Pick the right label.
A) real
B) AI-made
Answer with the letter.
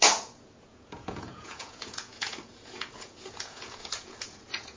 B